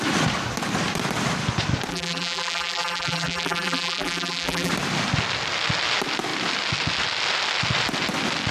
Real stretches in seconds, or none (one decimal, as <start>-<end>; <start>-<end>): 0.0-1.9; 4.7-8.5